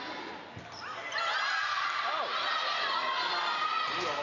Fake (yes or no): no